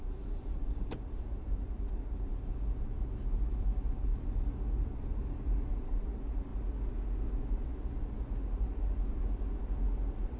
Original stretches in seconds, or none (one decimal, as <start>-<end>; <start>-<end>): 4.1-5.7; 6.5-10.4